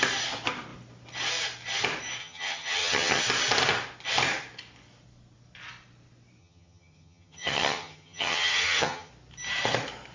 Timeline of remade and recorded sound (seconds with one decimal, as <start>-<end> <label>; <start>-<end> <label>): 0.0-2.2 recorded; 2.2-3.2 remade; 3.2-6.4 recorded; 6.4-9.1 remade; 9.1-10.1 recorded

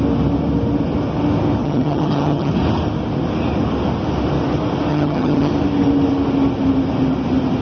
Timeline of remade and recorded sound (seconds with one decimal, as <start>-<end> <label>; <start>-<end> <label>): 0.0-1.6 recorded; 1.6-2.5 remade; 2.5-4.9 recorded; 4.9-5.5 remade; 5.5-7.6 recorded

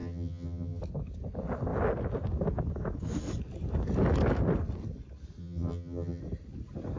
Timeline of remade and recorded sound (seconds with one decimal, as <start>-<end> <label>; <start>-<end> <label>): 0.0-0.8 remade; 0.8-5.4 recorded; 5.4-6.2 remade; 6.2-7.0 recorded

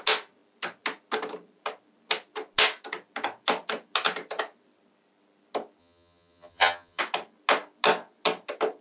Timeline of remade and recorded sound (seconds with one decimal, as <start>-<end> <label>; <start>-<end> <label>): 0.0-5.8 recorded; 5.8-7.0 remade; 7.0-8.8 recorded

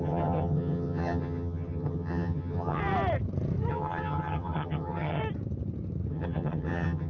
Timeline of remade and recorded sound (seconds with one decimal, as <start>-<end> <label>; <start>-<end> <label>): 0.0-2.8 remade; 2.8-3.7 recorded; 3.7-5.2 remade; 5.2-6.1 recorded; 6.1-7.1 remade

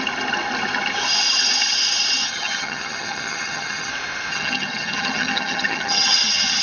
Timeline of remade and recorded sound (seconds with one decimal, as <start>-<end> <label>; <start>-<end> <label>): 0.0-2.2 recorded; 2.2-3.9 remade; 3.9-4.3 recorded; 4.3-6.6 remade

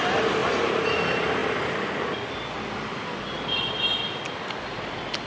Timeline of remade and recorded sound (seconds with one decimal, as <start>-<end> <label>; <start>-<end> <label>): 0.0-5.3 recorded